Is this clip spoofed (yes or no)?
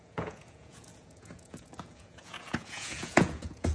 yes